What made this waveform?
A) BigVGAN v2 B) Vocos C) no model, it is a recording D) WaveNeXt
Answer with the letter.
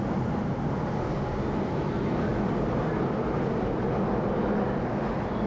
C